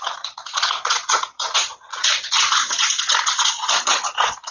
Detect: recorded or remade remade